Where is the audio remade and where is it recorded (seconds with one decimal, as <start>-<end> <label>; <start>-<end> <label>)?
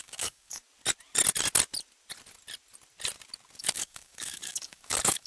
0.0-0.6 remade; 0.6-3.6 recorded; 3.6-5.3 remade